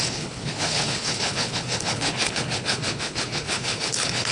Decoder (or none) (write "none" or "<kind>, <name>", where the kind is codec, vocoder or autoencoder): codec, HILCodec